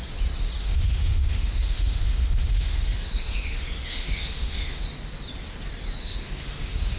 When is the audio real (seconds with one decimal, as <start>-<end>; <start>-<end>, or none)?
0.0-0.6; 4.8-6.0

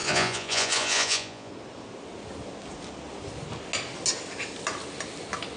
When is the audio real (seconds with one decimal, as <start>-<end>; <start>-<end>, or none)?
1.5-5.6

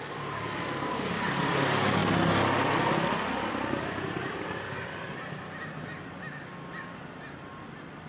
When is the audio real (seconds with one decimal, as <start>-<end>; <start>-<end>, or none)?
0.0-8.1

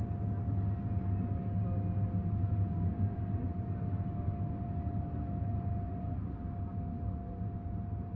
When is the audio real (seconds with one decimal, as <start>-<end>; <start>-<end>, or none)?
0.0-8.2

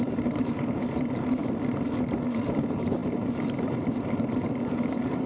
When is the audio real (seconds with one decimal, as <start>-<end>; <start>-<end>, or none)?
1.4-2.5

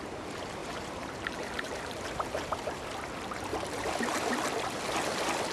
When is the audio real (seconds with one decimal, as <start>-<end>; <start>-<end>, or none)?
0.0-0.6; 3.0-3.5; 4.3-5.5

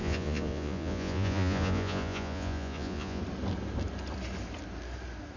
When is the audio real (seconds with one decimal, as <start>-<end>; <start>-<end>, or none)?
3.2-5.4

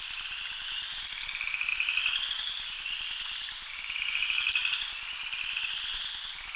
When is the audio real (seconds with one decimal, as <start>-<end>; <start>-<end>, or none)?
0.0-6.6